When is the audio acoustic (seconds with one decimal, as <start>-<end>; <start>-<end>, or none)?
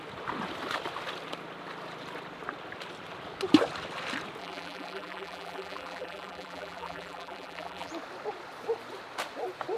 0.0-4.4; 7.9-9.8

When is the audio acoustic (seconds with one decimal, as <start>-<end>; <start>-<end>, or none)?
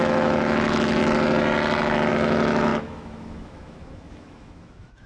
1.0-2.1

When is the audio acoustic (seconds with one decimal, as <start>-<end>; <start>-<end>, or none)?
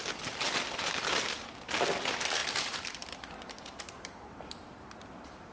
0.0-0.6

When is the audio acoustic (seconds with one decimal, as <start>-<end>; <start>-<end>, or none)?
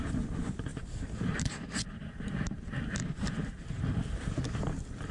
0.0-0.7; 3.8-5.1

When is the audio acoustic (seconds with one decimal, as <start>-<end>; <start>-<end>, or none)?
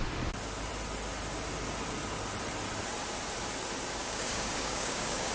0.0-4.0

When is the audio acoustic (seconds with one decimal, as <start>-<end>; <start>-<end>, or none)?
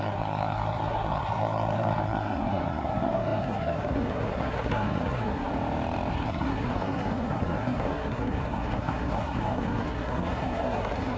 5.5-6.1